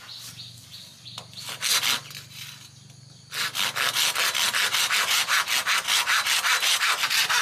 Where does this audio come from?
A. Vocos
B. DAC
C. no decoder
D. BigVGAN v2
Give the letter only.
C